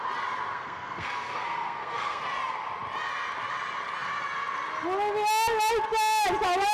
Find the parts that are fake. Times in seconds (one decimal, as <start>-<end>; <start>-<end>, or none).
0.5-2.2